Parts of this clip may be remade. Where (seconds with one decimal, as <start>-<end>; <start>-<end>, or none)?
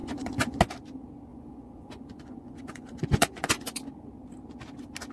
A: 0.0-0.6; 1.3-3.8